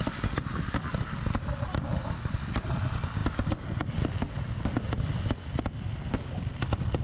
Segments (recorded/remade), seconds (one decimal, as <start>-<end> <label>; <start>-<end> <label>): 0.0-7.0 recorded